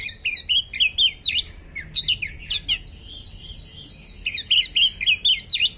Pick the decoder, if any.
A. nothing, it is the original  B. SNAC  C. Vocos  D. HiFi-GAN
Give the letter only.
A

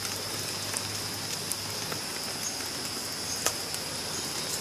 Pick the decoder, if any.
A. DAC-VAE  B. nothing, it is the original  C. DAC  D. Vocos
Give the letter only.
B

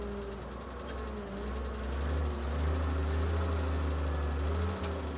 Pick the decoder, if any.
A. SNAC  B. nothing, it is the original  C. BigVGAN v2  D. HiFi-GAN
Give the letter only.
B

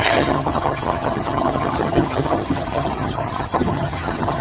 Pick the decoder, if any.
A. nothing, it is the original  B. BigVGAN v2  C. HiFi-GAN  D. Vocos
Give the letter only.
C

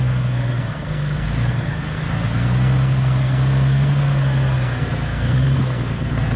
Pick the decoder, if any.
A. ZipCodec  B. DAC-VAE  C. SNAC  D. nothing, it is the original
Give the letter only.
C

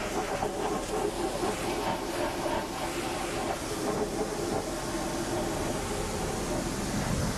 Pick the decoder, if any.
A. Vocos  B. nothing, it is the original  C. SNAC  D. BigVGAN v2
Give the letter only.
B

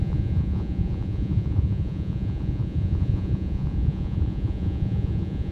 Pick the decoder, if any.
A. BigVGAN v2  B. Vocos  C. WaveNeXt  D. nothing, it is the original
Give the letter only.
B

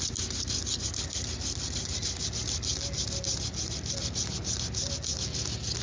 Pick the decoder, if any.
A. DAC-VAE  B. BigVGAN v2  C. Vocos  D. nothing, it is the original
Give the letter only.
D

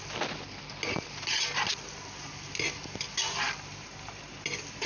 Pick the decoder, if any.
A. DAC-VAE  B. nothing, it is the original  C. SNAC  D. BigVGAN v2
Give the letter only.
B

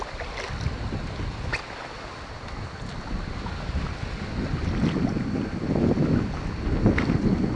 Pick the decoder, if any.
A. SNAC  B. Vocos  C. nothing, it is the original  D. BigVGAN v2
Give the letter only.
C